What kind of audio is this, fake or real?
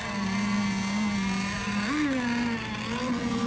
real